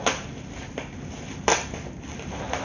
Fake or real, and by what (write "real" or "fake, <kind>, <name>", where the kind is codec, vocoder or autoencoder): real